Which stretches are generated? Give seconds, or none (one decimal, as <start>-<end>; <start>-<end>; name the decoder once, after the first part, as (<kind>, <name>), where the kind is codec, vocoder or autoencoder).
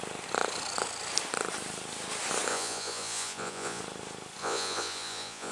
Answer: 2.5-3.8 (vocoder, Vocos); 4.4-5.5